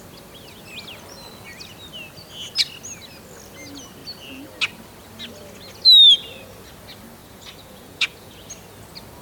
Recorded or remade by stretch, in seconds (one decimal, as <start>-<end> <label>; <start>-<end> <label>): 0.0-7.2 recorded; 7.2-8.5 remade; 8.5-9.2 recorded

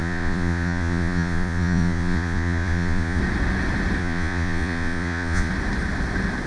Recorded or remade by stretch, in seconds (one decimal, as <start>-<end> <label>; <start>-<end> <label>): 0.0-3.2 remade; 3.2-4.0 recorded; 4.0-5.5 remade; 5.5-6.5 recorded

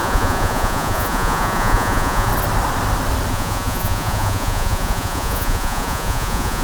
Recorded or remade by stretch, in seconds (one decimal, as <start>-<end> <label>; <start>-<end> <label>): 0.0-2.3 remade; 2.3-3.3 recorded; 3.3-6.6 remade